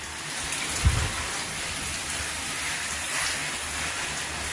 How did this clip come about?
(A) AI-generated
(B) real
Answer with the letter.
A